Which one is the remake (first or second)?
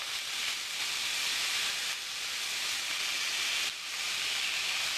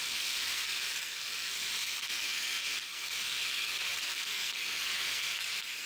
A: second